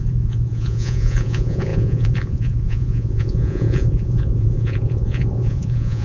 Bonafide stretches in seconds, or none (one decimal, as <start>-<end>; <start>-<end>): none